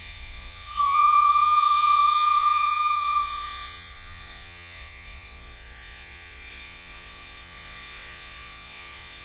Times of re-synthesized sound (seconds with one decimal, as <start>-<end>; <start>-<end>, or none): 0.0-9.2